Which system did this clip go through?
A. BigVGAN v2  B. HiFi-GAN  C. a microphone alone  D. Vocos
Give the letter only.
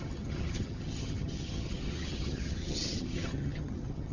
B